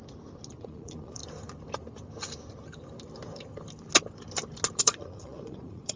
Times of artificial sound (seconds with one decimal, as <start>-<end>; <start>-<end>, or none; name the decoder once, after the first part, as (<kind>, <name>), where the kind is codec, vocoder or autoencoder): 0.6-1.2 (vocoder, Vocos); 4.8-6.0